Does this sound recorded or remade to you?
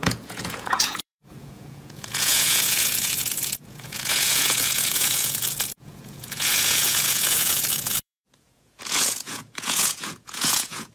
remade